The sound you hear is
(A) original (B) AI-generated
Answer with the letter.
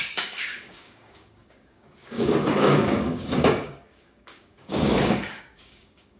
B